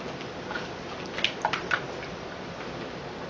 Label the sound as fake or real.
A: real